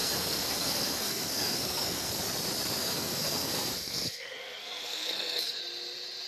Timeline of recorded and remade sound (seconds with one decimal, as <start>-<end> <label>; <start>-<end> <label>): 0.0-2.2 remade; 2.2-2.8 recorded; 2.8-5.6 remade; 5.6-6.3 recorded